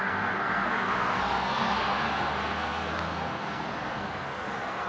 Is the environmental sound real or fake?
fake